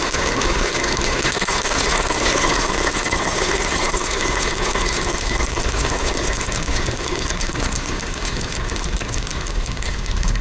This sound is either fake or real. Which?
fake